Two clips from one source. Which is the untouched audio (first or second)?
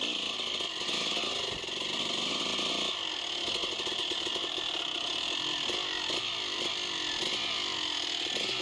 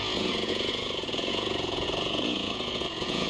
first